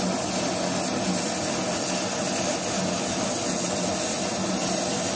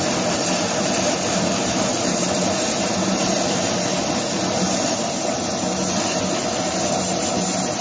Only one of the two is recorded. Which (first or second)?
first